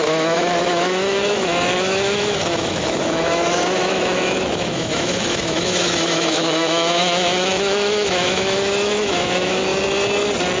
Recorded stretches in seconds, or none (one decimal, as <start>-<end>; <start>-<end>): 9.7-10.6